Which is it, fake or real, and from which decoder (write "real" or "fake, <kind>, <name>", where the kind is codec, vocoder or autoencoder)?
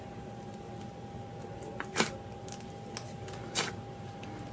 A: real